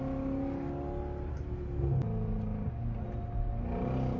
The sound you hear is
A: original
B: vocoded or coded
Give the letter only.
A